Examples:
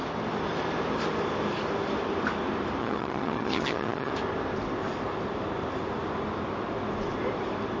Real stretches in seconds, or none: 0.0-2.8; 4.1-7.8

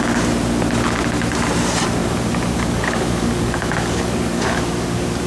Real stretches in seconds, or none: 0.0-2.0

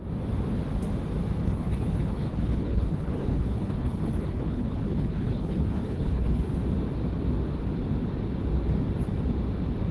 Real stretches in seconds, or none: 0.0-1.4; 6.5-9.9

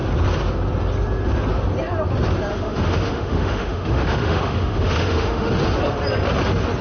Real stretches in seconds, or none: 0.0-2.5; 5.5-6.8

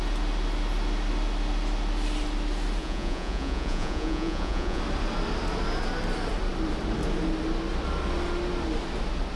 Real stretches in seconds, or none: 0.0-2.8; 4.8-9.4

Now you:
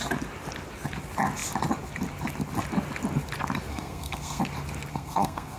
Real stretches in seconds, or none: 0.0-3.7; 4.4-4.9